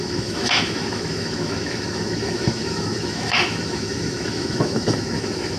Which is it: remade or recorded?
remade